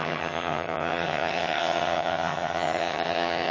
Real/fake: fake